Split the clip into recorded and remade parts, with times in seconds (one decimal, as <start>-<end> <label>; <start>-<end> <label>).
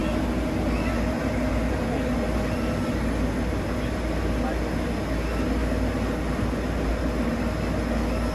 0.0-8.3 recorded